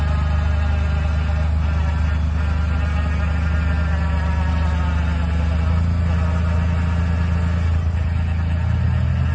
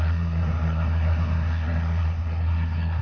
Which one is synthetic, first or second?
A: second